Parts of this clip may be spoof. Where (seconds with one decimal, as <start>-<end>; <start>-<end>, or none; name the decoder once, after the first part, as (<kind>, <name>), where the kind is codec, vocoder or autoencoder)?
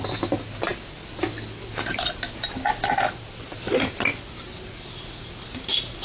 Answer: none